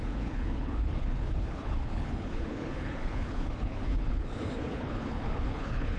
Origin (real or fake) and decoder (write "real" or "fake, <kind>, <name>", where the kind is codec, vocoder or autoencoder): fake, codec, HILCodec